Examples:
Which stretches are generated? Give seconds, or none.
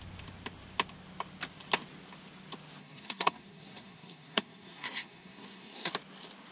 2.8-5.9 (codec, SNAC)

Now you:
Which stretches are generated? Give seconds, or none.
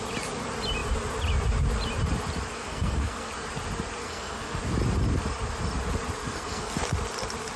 2.5-3.3 (codec, SNAC); 4.0-4.6; 6.2-6.7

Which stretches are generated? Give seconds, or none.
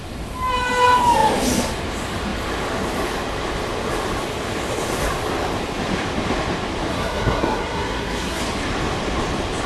6.9-8.4 (codec, SNAC)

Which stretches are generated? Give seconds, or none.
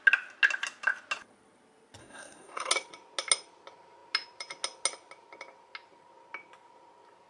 2.0-2.7 (codec, SNAC)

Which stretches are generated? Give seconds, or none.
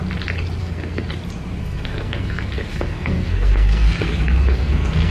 0.6-1.1 (codec, SNAC); 1.6-5.1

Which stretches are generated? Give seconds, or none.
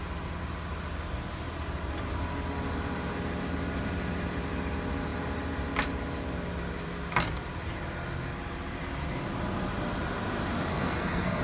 10.7-11.4 (codec, SNAC)